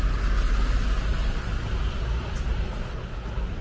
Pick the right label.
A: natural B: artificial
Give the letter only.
A